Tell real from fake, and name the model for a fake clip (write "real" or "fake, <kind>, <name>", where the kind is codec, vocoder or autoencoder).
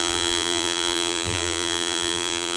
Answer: fake, vocoder, BigVGAN v2